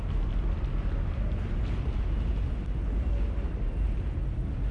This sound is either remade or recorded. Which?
recorded